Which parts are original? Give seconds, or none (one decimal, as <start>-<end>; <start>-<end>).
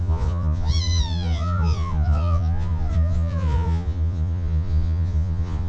none